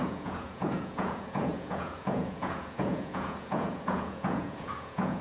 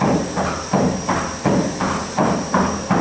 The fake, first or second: first